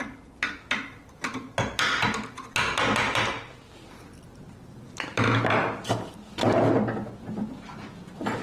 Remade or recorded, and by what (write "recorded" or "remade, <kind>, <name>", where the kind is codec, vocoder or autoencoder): recorded